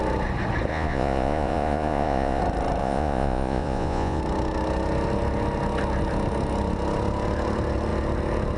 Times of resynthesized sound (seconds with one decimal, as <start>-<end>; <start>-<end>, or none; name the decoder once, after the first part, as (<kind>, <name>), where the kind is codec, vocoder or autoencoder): 0.7-2.4 (vocoder, Vocos); 2.8-4.2